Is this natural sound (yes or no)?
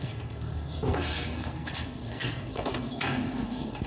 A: no